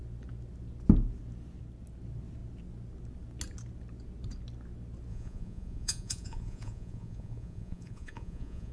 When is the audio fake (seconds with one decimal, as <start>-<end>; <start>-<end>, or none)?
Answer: 5.1-8.7